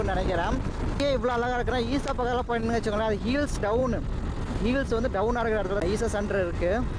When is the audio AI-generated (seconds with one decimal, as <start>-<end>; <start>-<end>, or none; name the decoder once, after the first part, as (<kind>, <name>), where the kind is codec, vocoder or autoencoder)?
none